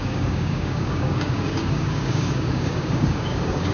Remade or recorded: remade